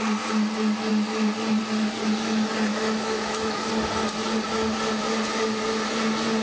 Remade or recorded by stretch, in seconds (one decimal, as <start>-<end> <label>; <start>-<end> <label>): 0.0-2.7 recorded; 2.7-3.7 remade; 3.7-6.4 recorded